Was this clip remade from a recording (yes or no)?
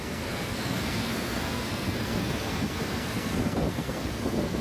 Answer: yes